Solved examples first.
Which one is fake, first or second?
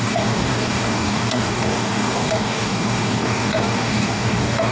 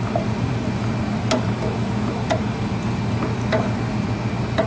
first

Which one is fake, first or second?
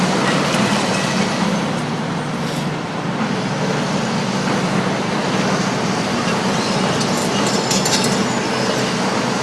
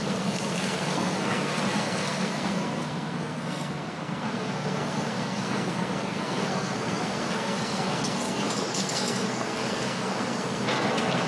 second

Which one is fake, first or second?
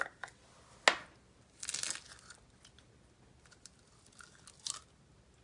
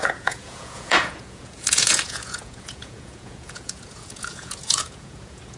second